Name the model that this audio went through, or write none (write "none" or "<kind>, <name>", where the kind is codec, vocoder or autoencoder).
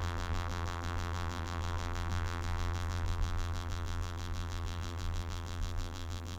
vocoder, BigVGAN v2